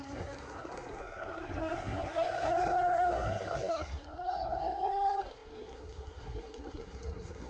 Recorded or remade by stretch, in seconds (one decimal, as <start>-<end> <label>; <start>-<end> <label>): 0.0-7.5 remade